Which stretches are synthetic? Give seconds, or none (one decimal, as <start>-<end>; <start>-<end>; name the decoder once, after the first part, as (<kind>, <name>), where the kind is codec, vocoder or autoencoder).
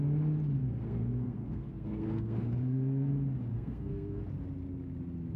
0.6-3.1 (codec, SNAC); 3.5-4.2